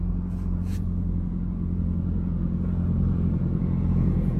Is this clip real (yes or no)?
no